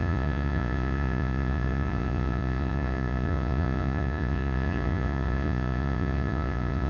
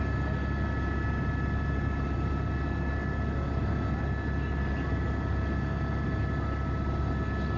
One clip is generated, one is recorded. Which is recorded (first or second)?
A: second